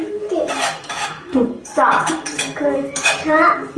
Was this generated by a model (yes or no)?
yes